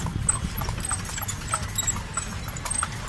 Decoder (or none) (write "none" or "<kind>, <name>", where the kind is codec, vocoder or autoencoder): none